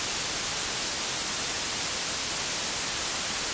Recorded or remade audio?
recorded